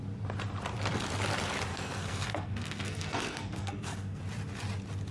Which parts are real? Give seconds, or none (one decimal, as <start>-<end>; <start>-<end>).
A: 0.0-1.7; 4.2-5.1